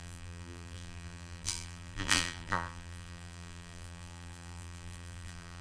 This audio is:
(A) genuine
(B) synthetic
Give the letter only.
B